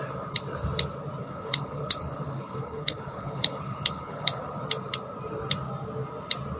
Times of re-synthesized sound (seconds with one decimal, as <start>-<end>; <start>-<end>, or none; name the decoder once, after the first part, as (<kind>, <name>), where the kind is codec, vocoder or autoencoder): 1.2-4.4 (codec, HILCodec)